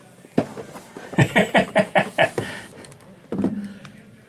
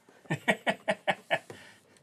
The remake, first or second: first